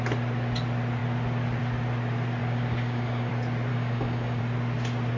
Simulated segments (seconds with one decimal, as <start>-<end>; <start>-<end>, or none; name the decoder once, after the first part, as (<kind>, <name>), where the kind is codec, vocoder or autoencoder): 2.4-3.3 (codec, DAC); 3.7-4.4